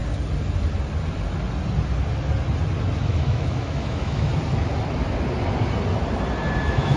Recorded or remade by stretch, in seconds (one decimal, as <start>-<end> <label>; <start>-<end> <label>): 0.0-3.0 recorded; 3.0-4.3 remade; 4.3-6.6 recorded; 6.6-7.0 remade

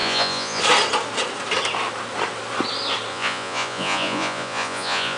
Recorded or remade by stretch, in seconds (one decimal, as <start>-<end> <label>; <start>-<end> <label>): 0.0-0.6 remade; 0.6-3.1 recorded; 3.1-5.2 remade

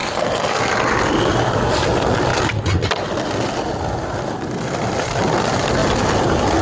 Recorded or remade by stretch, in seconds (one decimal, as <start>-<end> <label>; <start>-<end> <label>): 0.0-0.6 remade; 0.6-6.6 recorded

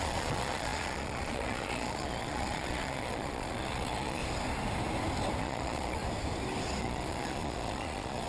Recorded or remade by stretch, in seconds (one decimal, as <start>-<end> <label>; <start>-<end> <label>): 0.0-4.2 remade; 4.2-5.4 recorded; 5.4-6.0 remade; 6.0-6.8 recorded; 6.8-8.3 remade

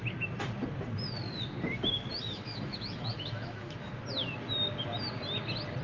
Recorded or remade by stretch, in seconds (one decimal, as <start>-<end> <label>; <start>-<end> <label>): 0.0-2.2 recorded; 2.2-4.0 remade; 4.0-5.8 recorded

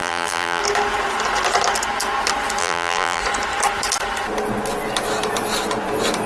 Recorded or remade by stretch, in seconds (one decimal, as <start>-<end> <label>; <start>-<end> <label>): 0.0-0.6 remade; 0.6-2.6 recorded; 2.6-3.2 remade; 3.2-6.3 recorded

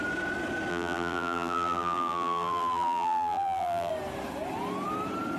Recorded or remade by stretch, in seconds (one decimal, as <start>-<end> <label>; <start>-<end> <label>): 0.0-0.7 recorded; 0.7-3.9 remade; 3.9-5.4 recorded